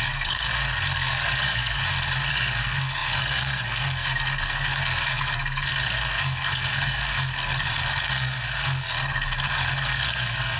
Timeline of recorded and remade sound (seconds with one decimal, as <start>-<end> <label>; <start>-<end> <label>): 0.0-1.8 remade; 1.8-2.3 recorded; 2.3-10.6 remade

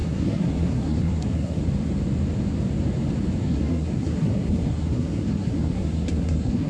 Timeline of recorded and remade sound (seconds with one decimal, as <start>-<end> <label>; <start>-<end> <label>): 0.0-1.6 remade; 1.6-3.4 recorded; 3.4-6.7 remade

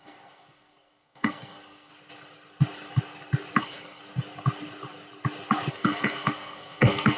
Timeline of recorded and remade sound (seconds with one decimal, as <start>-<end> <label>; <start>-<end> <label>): 0.0-1.9 remade; 1.9-3.6 recorded; 3.6-4.0 remade; 4.0-5.7 recorded; 5.7-7.2 remade

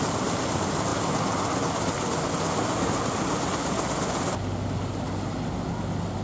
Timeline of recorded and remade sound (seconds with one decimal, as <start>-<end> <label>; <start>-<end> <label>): 0.0-6.2 recorded

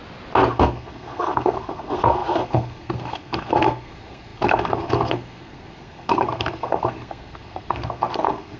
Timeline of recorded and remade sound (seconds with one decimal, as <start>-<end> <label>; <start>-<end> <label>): 0.0-0.5 recorded; 0.5-8.6 remade

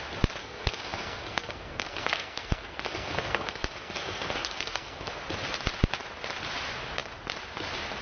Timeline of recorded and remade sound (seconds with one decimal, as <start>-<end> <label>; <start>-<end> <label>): 0.0-0.4 recorded; 0.4-5.2 remade; 5.2-8.0 recorded

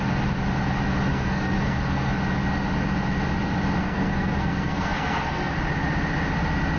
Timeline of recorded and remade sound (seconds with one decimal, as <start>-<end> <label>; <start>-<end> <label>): 0.0-1.1 recorded; 1.1-2.1 remade; 2.1-3.8 recorded; 3.8-5.5 remade; 5.5-6.8 recorded